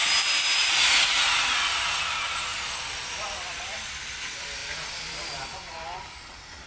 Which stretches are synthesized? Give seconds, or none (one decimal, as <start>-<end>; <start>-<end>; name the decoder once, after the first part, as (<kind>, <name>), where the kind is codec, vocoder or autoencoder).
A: 0.6-1.1 (vocoder, BigVGAN v2); 2.5-3.9; 4.6-5.6